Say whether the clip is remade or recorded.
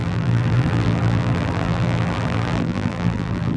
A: remade